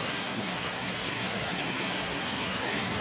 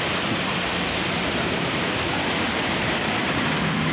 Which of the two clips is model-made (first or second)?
first